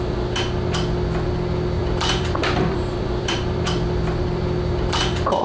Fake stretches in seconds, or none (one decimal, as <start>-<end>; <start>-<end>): 1.8-5.0

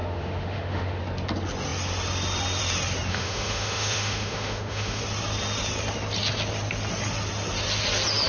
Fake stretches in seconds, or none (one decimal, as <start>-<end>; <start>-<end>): 0.0-1.0; 3.1-5.0

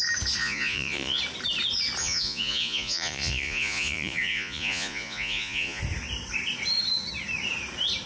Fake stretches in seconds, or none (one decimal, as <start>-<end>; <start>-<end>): 0.4-1.2; 2.0-5.8

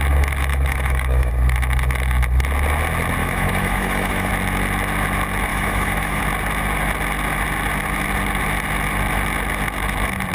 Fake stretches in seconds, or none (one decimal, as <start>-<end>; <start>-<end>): 0.5-1.3; 3.2-4.3; 5.5-6.2

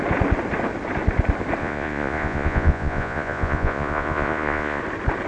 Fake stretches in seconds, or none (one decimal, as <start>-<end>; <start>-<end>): 1.6-4.8